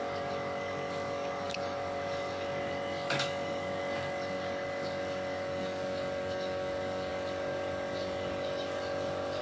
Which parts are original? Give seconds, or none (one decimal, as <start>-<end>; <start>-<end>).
none